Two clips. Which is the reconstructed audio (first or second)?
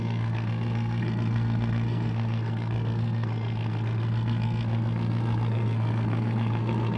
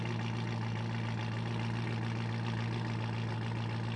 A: first